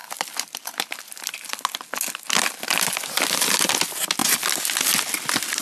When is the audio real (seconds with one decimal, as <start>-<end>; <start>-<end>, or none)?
0.6-5.6